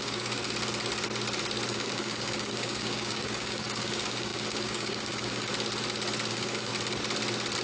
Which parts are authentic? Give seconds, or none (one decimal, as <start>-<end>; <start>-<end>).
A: 0.4-1.7; 5.5-6.3; 6.7-7.6